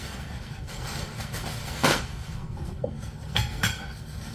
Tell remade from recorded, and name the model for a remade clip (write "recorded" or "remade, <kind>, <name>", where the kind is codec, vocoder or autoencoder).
remade, codec, SNAC